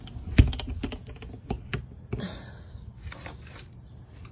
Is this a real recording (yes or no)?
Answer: yes